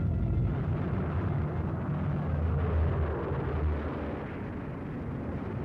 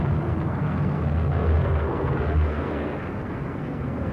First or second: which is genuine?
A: first